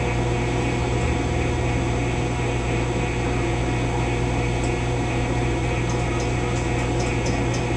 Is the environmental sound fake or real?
real